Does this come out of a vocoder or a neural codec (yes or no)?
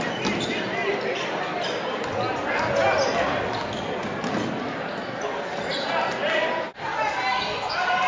no